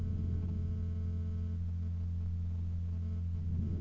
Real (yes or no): yes